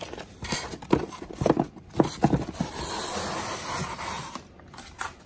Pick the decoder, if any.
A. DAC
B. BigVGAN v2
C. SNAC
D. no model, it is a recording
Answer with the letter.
D